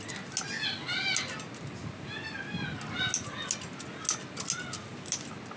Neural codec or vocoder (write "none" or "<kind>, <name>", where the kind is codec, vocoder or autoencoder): none